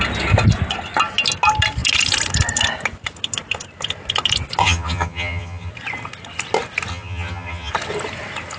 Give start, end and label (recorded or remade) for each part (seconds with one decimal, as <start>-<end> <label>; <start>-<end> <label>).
0.0-4.6 recorded; 4.6-5.7 remade; 5.7-6.9 recorded; 6.9-7.7 remade; 7.7-8.6 recorded